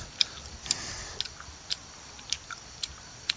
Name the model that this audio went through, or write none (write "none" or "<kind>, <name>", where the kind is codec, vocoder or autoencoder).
none